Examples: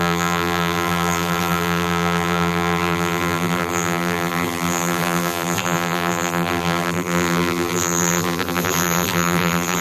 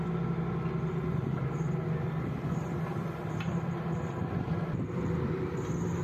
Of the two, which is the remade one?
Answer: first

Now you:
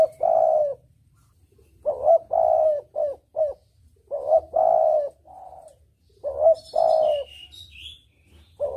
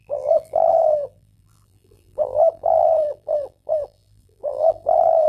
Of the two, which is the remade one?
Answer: second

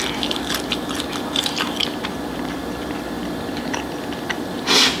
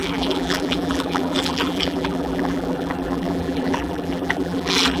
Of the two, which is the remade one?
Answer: second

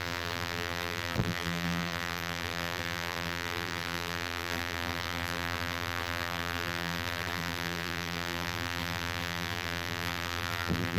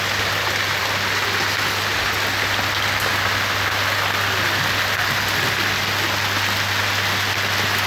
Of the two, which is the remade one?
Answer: first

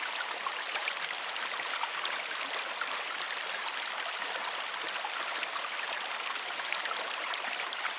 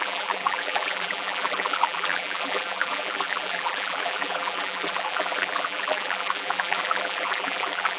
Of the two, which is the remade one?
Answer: second